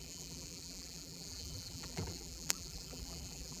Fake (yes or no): yes